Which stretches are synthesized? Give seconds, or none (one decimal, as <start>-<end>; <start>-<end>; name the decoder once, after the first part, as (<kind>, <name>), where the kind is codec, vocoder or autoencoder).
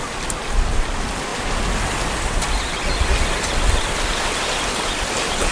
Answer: none